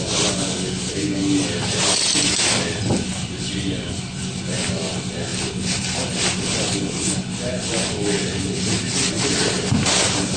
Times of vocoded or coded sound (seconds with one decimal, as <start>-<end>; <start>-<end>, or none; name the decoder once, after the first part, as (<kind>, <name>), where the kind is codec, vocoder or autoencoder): none